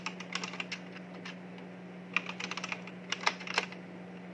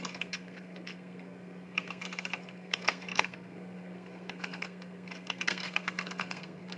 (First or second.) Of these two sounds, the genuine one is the first